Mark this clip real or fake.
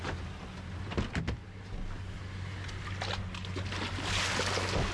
real